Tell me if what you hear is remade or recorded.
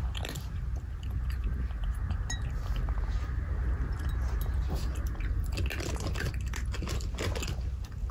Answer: recorded